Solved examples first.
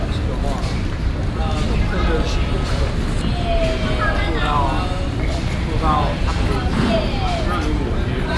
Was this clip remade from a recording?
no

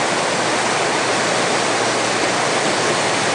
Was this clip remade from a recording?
no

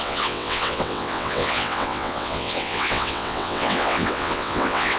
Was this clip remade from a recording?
yes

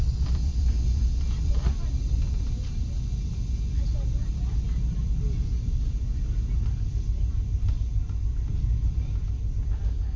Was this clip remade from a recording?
no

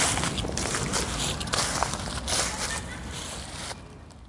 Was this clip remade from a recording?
no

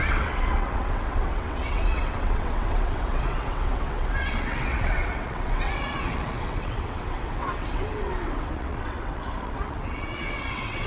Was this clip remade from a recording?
yes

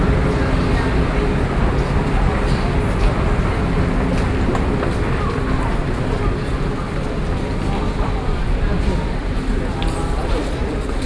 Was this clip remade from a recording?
no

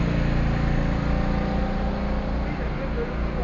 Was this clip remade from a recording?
no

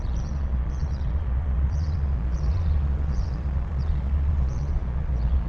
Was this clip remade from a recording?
yes